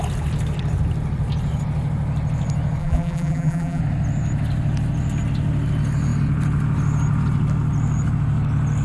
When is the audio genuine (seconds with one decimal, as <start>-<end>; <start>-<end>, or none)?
0.0-2.8; 3.8-8.8